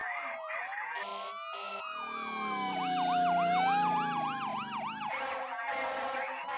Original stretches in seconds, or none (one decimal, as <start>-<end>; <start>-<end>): 0.0-6.6